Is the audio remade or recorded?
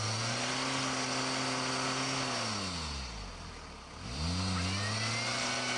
recorded